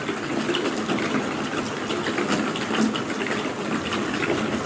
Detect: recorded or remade recorded